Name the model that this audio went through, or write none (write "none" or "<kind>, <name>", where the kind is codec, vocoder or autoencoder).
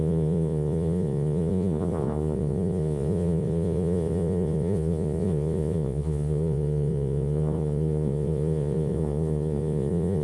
vocoder, Vocos